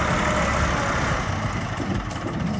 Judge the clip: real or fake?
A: real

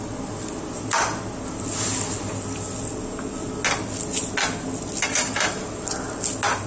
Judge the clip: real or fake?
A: real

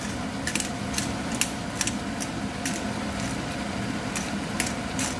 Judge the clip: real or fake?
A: real